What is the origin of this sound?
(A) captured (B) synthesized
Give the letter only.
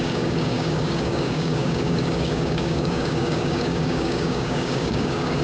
B